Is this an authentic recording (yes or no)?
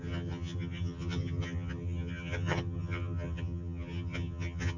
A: no